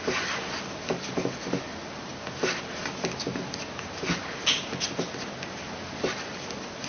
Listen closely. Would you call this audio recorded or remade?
recorded